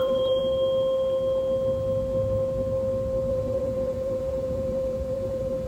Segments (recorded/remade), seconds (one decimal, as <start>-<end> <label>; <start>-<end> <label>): 0.0-0.4 remade; 0.4-3.3 recorded; 3.3-5.7 remade